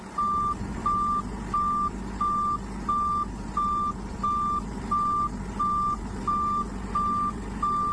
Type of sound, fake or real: real